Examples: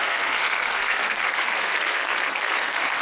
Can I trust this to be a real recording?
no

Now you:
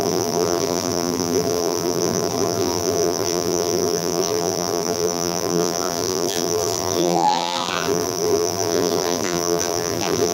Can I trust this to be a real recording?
no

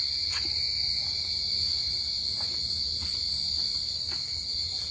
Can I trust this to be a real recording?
yes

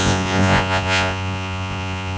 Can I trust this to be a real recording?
no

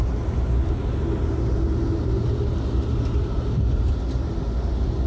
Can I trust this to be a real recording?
yes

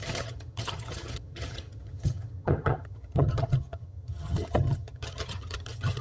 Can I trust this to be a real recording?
no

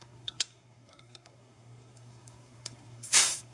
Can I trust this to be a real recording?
no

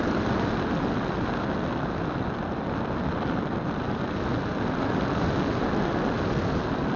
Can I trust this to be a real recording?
yes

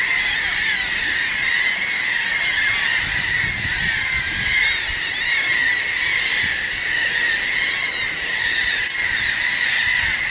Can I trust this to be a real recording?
yes